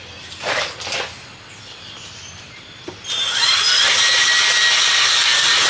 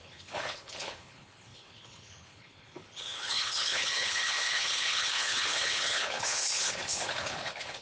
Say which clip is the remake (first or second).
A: second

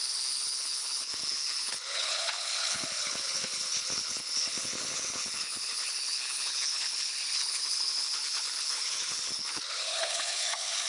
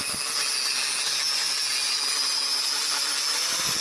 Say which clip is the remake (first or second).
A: first